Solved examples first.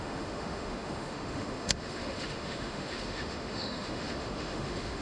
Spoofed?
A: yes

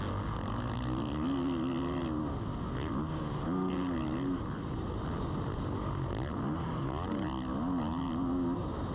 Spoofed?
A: no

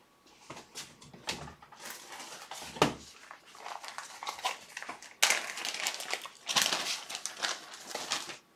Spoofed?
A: no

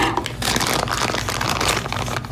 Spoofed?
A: no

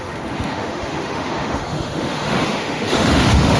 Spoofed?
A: yes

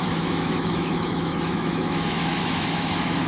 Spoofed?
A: yes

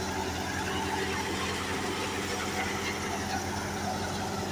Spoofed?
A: no